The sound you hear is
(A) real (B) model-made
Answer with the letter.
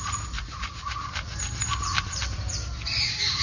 A